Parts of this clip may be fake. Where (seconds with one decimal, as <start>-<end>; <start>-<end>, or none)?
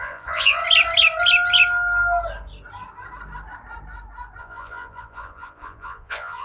0.0-0.6; 4.4-6.4